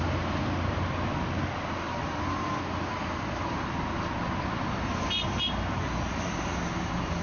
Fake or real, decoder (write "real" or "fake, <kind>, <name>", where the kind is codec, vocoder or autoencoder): real